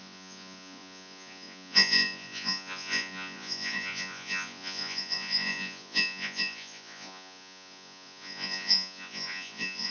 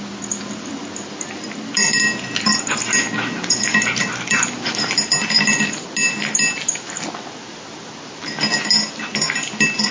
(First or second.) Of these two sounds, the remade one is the first